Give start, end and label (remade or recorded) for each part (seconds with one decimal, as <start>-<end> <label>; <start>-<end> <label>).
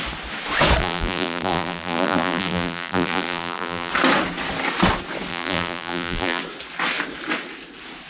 0.0-0.8 recorded; 0.8-3.9 remade; 3.9-5.3 recorded; 5.3-6.4 remade; 6.4-8.1 recorded